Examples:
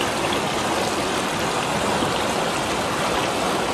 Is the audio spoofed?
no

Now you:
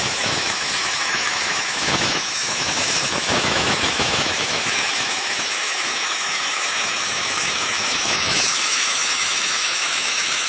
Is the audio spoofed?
yes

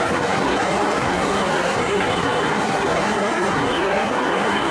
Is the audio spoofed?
yes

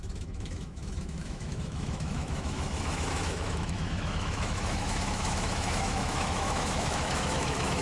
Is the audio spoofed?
yes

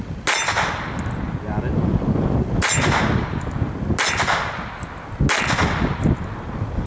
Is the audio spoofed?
no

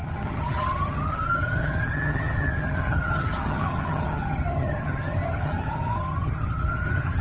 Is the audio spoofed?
yes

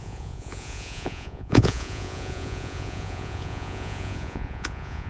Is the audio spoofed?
yes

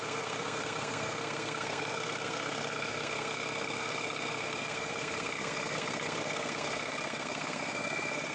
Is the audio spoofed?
yes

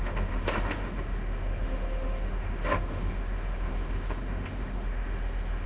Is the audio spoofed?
yes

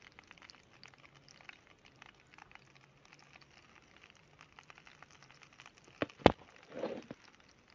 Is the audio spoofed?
no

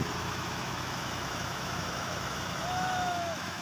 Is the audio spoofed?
yes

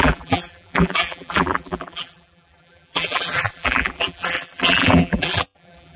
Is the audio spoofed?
yes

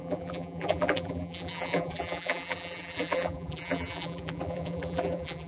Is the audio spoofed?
yes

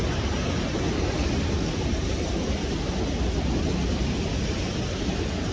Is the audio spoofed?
no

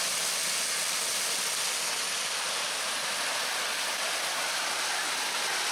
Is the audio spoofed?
no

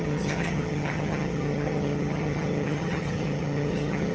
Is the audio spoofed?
yes